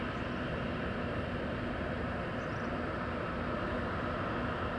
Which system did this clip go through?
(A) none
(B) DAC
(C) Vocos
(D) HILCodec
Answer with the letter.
A